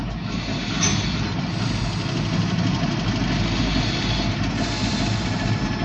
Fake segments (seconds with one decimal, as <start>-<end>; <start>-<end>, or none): none